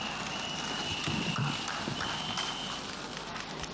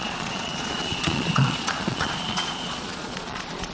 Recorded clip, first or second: first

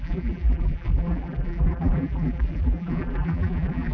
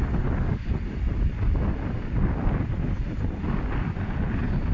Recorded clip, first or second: second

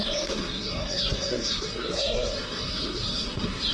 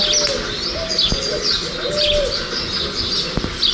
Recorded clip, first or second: second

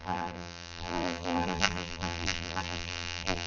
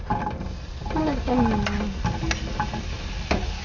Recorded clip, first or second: second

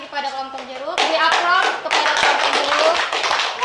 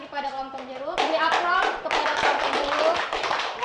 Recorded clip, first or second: first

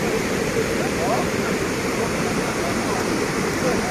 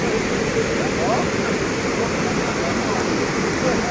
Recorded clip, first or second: second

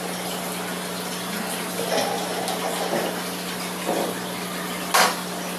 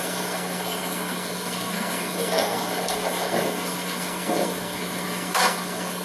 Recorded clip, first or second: first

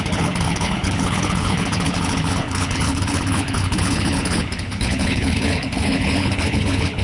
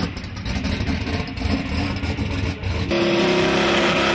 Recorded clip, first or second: second